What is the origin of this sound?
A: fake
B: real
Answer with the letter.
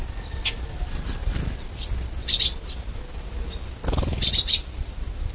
B